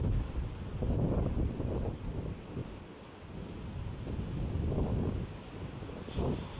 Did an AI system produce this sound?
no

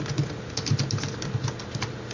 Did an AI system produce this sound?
no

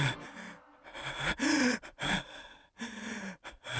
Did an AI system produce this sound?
no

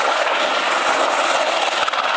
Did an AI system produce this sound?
no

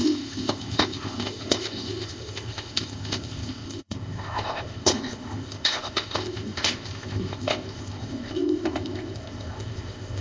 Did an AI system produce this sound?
yes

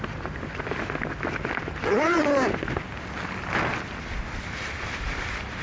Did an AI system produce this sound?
no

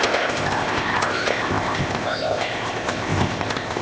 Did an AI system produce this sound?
yes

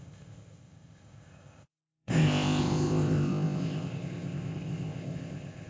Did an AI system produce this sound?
yes